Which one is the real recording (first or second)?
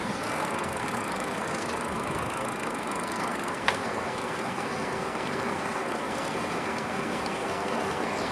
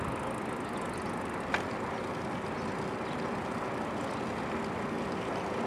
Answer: second